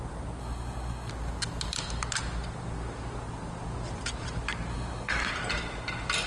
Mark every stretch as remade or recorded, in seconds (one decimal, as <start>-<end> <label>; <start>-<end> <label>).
0.0-0.4 recorded; 0.4-1.1 remade; 1.1-4.7 recorded; 4.7-5.3 remade; 5.3-6.3 recorded